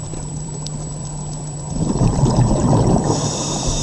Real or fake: fake